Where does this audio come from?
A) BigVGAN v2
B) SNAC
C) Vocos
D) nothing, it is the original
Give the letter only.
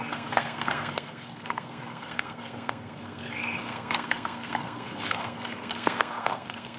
B